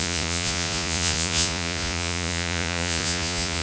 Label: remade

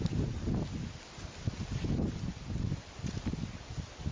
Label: recorded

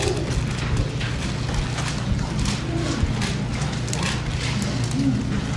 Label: recorded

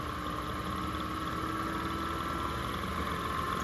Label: recorded